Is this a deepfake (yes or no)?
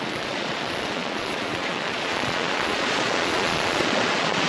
yes